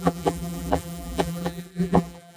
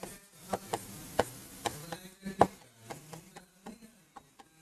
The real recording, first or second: second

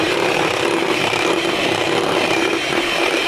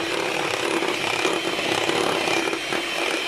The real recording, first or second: second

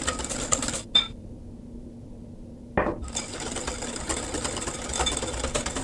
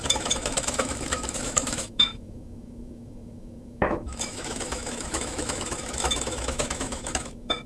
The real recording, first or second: first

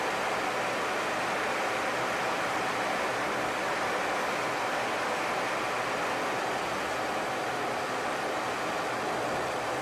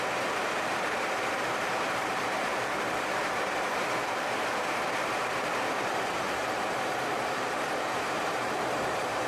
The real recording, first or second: first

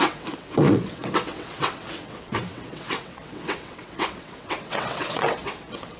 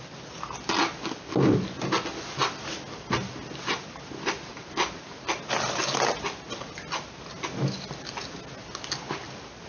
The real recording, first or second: second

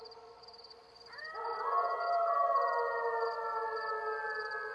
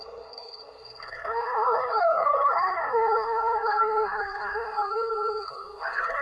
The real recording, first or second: first